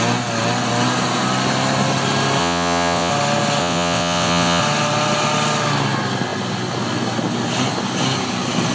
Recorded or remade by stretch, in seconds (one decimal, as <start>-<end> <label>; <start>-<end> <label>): 0.0-2.4 recorded; 2.4-3.1 remade; 3.1-3.6 recorded; 3.6-4.6 remade; 4.6-8.7 recorded